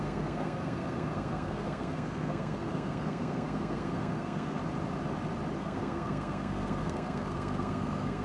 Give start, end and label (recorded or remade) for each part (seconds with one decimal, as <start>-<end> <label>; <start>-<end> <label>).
0.0-4.6 remade; 4.6-5.6 recorded; 5.6-8.2 remade